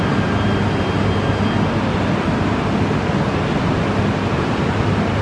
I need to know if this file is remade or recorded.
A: recorded